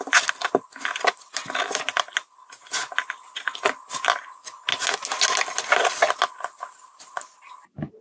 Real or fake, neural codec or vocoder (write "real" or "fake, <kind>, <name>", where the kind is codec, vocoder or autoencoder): real